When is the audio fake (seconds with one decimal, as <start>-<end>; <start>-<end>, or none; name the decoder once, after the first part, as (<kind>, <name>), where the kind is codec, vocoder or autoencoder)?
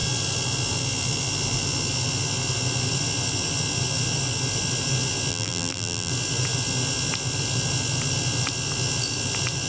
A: 5.3-6.1 (vocoder, BigVGAN v2)